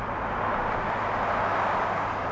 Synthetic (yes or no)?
no